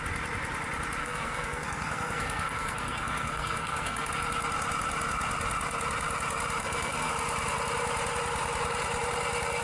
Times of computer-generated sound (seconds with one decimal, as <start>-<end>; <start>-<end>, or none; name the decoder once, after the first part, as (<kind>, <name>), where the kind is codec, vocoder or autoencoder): 1.0-4.1 (codec, SNAC); 6.6-7.1